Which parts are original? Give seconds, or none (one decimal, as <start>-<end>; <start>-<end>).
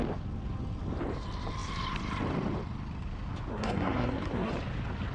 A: 0.0-3.5; 4.5-5.1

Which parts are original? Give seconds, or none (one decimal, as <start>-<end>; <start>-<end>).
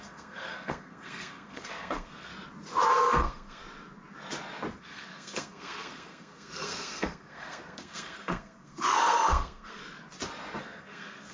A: 2.3-2.9; 3.6-4.8; 9.8-10.6